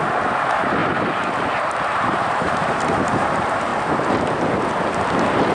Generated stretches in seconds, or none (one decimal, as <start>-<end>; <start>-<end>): 0.0-3.7; 5.1-5.5